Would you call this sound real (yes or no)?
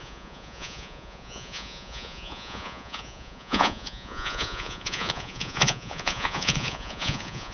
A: no